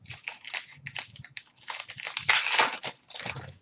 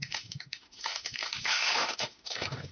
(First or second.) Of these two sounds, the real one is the first